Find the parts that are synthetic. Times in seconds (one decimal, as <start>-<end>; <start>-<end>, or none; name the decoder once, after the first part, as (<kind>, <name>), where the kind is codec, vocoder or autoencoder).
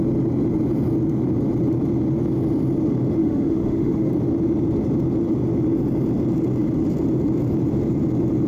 3.2-4.1 (autoencoder, DAC-VAE)